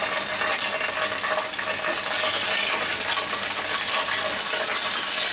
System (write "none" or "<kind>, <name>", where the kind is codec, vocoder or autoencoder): none